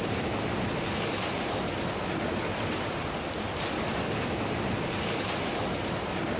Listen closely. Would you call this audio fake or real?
real